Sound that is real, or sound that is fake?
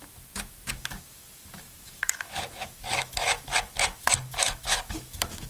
fake